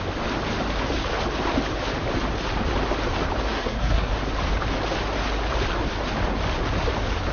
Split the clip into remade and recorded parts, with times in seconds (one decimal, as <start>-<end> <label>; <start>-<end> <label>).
0.0-3.5 recorded; 3.5-4.1 remade; 4.1-7.3 recorded